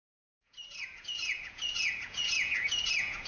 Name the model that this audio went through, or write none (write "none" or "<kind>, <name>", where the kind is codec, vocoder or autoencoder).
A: vocoder, Vocos